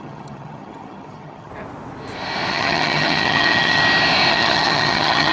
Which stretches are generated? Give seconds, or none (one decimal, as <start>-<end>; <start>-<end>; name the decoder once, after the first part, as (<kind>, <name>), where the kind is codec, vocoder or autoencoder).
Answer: 0.0-1.5 (vocoder, HiFi-GAN); 2.5-3.8; 4.3-5.3